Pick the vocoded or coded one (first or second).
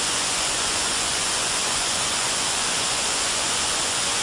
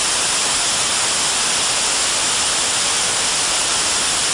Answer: first